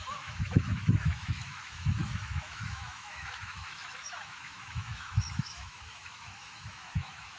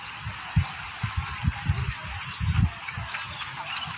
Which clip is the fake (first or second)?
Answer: first